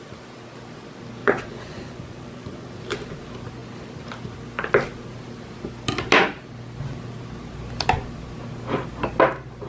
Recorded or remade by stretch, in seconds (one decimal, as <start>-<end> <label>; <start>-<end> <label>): 0.0-1.2 recorded; 1.2-2.8 remade; 2.8-9.7 recorded